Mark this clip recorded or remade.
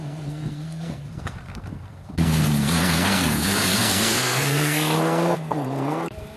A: remade